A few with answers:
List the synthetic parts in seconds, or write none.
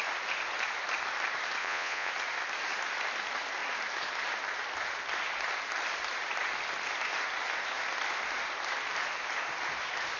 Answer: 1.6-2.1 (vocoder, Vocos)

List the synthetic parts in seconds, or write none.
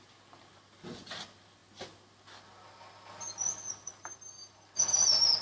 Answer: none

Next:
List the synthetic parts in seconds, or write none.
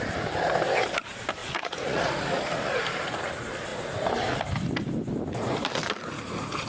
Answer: 1.4-2.8 (vocoder, Vocos)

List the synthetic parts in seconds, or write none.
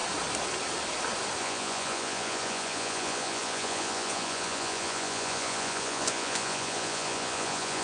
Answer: 1.4-7.8 (vocoder, Vocos)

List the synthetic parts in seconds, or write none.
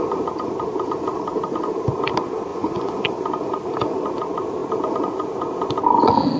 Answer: 2.5-3.1 (vocoder, Vocos)